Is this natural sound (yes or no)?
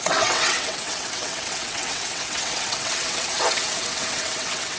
no